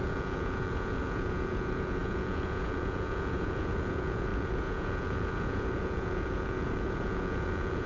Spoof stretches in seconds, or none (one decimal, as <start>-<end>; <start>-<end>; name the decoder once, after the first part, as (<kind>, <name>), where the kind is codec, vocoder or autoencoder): 0.0-7.9 (vocoder, Vocos)